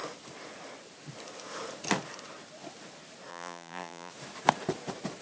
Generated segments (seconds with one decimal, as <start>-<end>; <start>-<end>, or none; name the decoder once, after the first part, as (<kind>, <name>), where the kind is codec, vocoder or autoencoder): 3.3-4.1 (vocoder, BigVGAN v2)